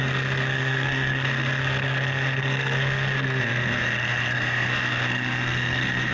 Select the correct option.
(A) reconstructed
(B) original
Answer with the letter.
A